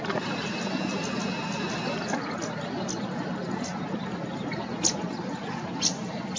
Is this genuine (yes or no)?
yes